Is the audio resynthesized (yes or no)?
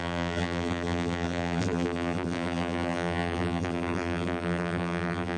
yes